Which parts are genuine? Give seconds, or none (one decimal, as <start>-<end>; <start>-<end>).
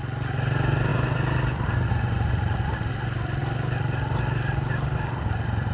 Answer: 0.0-5.7